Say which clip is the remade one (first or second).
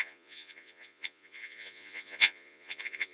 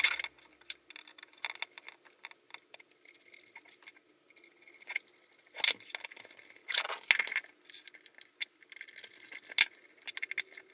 first